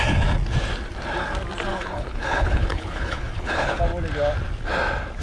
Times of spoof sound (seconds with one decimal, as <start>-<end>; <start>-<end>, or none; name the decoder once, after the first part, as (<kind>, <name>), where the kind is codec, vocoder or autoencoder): 1.7-3.8 (codec, HILCodec)